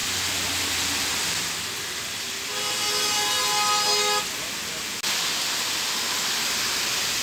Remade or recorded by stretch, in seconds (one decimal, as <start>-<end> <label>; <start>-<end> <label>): 0.0-7.2 recorded